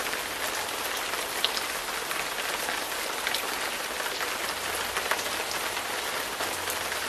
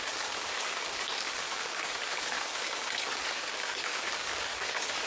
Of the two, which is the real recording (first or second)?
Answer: first